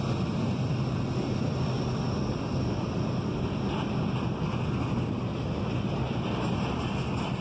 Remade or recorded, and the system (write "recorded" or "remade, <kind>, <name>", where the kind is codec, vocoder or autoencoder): recorded